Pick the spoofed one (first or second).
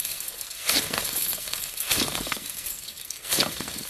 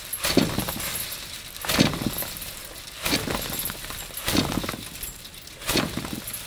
first